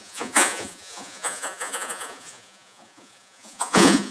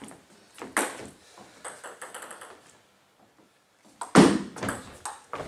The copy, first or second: first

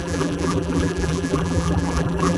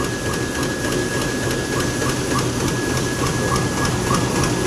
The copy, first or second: first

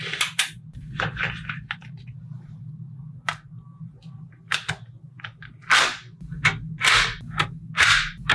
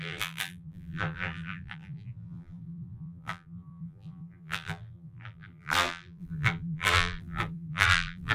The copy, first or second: second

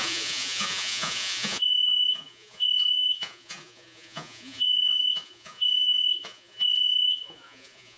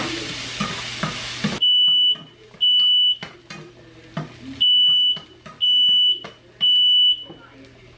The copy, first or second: first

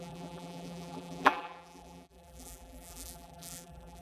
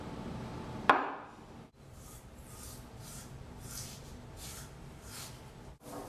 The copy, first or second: first